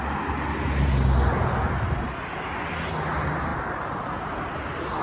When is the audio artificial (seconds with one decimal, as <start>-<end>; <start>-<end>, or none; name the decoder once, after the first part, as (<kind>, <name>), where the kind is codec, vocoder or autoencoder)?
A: none